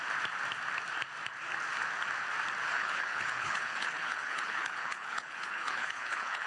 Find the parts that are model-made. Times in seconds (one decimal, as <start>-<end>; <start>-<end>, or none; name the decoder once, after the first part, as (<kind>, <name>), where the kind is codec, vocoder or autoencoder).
2.6-6.5 (codec, HILCodec)